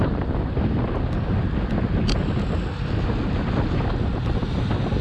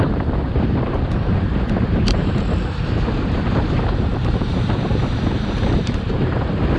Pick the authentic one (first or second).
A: first